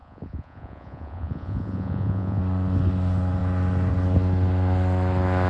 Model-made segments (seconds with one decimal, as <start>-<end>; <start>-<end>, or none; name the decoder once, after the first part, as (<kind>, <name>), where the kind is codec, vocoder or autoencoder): 0.0-2.4 (vocoder, Vocos)